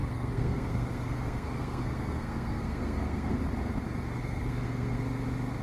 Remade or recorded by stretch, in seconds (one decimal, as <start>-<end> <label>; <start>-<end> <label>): 0.0-3.4 remade; 3.4-4.2 recorded; 4.2-5.0 remade; 5.0-5.6 recorded

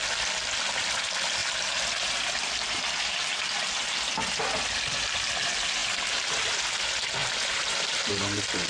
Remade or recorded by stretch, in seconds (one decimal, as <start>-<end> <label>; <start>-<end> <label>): 0.0-5.8 recorded; 5.8-6.7 remade; 6.7-7.2 recorded; 7.2-8.1 remade; 8.1-8.7 recorded